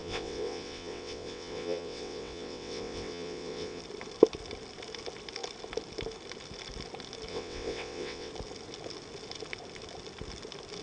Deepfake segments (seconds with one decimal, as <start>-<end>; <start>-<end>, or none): 0.0-3.8; 7.3-8.3